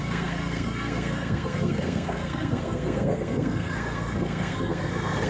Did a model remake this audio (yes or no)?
yes